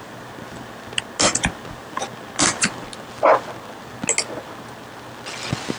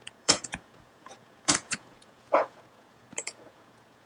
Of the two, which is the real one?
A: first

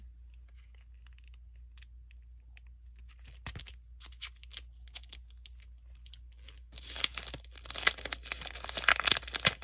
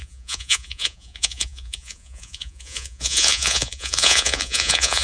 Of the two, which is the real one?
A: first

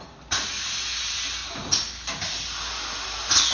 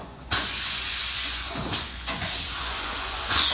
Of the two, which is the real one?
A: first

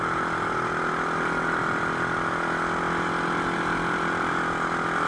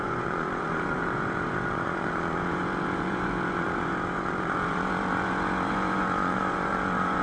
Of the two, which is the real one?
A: first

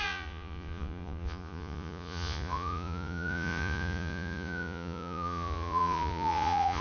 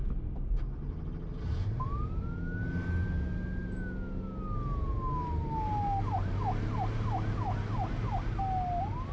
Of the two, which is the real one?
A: second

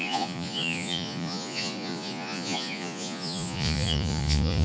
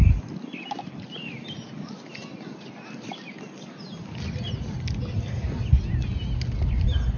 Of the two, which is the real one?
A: second